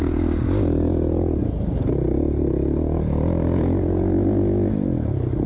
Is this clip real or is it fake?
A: real